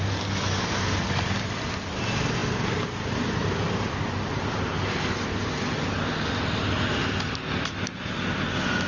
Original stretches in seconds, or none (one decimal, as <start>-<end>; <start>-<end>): 0.0-8.9